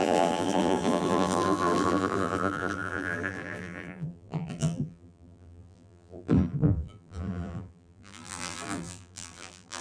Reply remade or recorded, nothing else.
remade